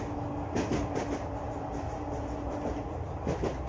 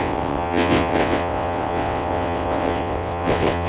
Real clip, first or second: first